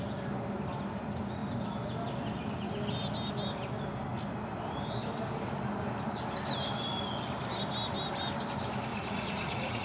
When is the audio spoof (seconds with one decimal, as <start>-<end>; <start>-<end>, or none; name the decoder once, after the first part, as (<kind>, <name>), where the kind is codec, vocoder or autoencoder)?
8.9-9.8 (vocoder, Vocos)